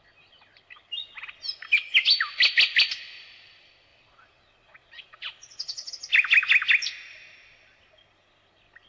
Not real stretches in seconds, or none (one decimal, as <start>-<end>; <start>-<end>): 3.9-5.9